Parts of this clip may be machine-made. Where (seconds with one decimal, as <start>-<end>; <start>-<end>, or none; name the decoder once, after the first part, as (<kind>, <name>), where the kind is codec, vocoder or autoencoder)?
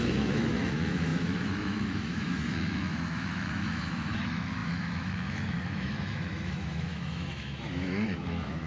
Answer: 0.0-8.7 (autoencoder, DAC-VAE)